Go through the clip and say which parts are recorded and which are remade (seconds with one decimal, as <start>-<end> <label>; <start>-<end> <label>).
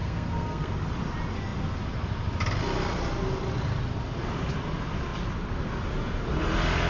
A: 0.0-0.7 remade; 0.7-6.9 recorded